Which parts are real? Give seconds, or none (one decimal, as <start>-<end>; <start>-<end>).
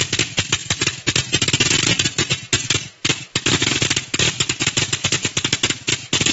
0.0-6.3